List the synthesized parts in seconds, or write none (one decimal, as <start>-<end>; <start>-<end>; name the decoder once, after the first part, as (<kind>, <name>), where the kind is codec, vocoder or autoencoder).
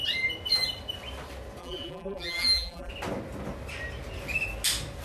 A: 1.6-2.9 (vocoder, BigVGAN v2)